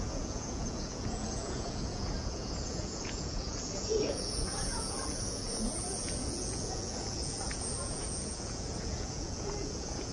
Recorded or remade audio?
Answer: remade